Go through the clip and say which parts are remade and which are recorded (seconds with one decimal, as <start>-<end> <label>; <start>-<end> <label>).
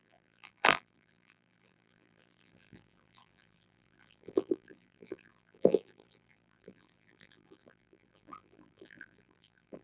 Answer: 0.0-9.8 remade